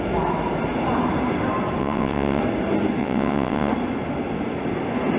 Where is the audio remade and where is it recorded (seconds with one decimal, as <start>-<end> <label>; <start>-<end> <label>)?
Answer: 0.0-1.8 recorded; 1.8-2.4 remade; 2.4-3.0 recorded; 3.0-3.7 remade; 3.7-5.2 recorded